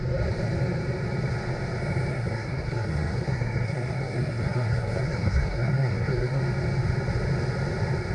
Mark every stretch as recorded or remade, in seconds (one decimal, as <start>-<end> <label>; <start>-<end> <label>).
0.0-2.1 recorded; 2.1-6.4 remade; 6.4-8.1 recorded